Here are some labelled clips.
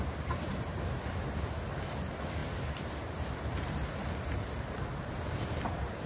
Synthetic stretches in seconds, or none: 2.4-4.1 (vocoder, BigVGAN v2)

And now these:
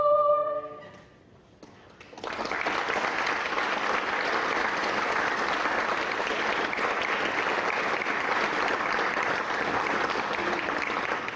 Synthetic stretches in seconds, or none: none

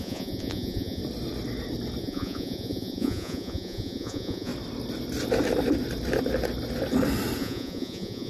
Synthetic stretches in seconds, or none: 0.0-1.0 (vocoder, Vocos); 2.0-4.5; 7.4-8.3

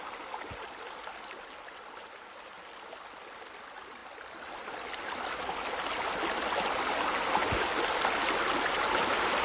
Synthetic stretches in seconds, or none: none

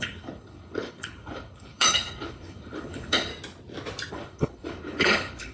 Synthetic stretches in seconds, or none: 0.0-3.3 (codec, HILCodec); 4.1-5.5

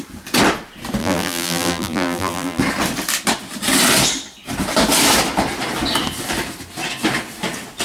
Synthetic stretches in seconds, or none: 1.0-2.6 (vocoder, BigVGAN v2)